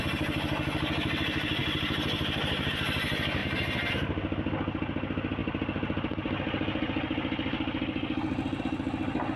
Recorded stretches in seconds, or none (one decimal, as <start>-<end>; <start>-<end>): 0.0-1.6; 2.7-9.4